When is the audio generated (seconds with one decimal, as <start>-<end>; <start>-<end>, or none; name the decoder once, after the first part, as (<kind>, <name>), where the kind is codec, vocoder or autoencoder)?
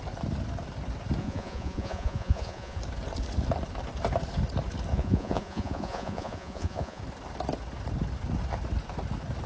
1.2-2.8 (vocoder, Vocos); 4.9-7.0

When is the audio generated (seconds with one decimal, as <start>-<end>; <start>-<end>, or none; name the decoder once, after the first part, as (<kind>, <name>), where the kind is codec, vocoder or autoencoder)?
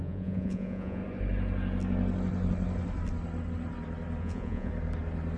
0.0-1.0 (vocoder, Vocos); 4.2-4.7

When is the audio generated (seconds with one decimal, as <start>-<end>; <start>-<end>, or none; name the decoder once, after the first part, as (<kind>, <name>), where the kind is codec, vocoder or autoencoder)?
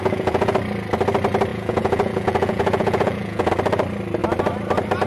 0.0-0.6 (vocoder, Vocos); 1.5-3.5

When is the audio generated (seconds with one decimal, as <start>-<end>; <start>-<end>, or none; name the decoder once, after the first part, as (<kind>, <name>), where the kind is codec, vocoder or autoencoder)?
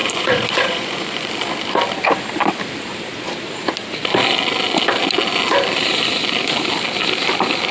0.0-1.3 (vocoder, Vocos)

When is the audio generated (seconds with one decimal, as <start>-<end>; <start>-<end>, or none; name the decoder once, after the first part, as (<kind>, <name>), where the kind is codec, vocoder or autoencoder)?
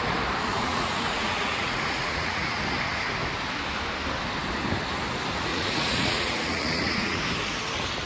0.5-2.6 (vocoder, Vocos); 5.5-7.2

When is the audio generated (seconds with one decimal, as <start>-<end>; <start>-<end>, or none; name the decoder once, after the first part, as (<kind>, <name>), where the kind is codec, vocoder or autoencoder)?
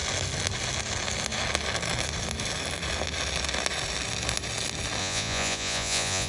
5.0-6.3 (vocoder, Vocos)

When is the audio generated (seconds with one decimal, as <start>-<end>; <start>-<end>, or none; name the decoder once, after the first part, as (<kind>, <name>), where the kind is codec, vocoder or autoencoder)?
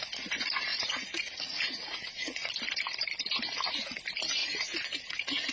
0.7-2.5 (vocoder, Vocos); 4.4-5.5